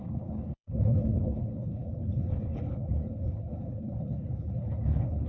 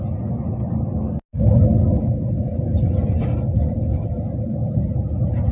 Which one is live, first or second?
second